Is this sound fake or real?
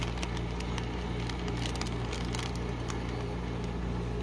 real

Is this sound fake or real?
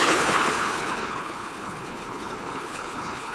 fake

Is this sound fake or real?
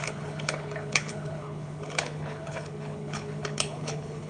fake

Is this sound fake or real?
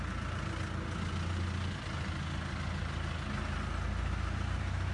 real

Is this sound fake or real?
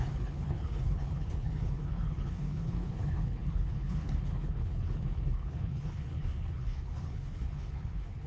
fake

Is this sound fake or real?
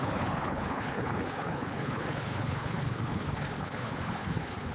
fake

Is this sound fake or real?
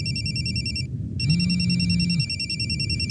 real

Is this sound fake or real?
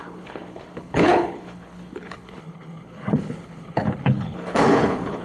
fake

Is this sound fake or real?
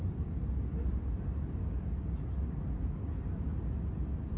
real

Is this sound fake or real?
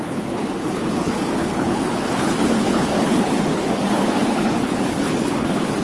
fake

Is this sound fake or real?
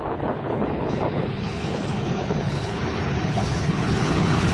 fake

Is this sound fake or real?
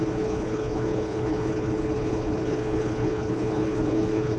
fake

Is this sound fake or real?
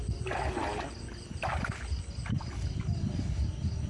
real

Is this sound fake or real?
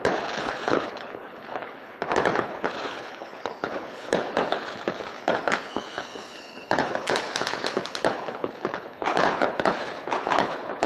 fake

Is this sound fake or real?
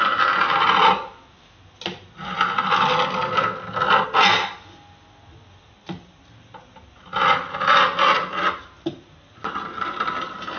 real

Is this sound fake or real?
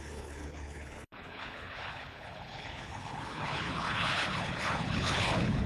fake